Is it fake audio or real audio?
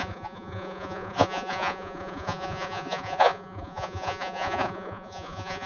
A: fake